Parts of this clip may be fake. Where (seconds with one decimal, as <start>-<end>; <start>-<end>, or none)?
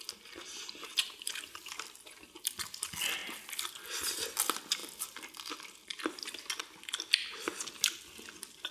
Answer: 0.9-2.2